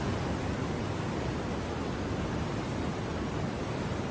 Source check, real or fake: real